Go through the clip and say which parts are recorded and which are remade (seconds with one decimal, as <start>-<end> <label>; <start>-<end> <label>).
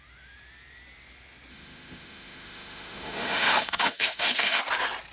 0.0-1.5 recorded; 1.5-4.6 remade; 4.6-5.1 recorded